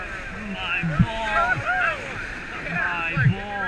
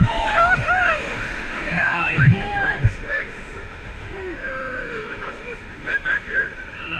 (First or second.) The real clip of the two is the first